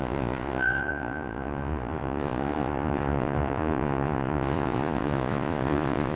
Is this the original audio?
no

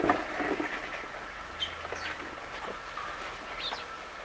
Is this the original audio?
yes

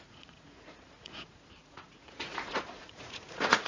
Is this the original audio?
no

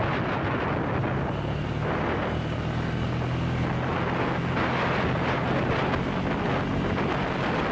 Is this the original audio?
yes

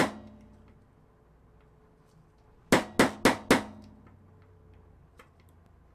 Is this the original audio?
yes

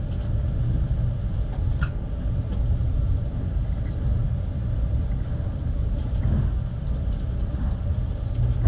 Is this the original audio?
yes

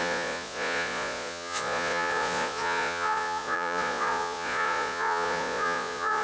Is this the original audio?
no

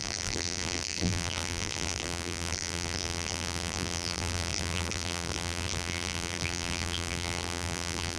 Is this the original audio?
no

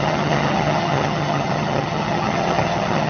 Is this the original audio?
no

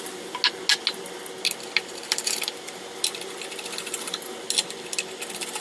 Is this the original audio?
yes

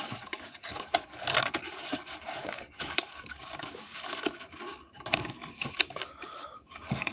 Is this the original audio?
no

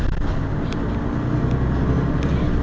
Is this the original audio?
yes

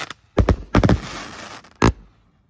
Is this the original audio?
yes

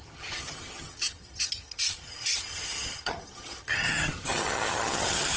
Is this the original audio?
no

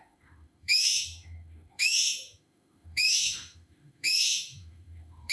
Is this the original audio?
no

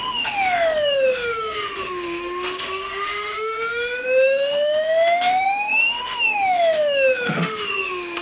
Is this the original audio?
no